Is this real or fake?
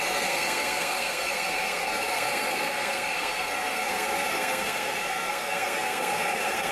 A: fake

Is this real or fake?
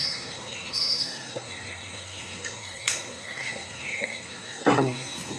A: fake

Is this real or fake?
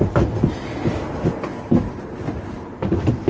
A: real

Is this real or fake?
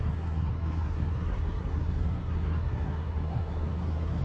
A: fake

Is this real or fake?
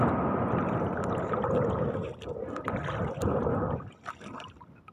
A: real